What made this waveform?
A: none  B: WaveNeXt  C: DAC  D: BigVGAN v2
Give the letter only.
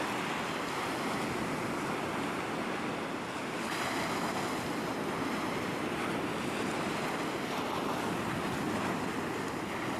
A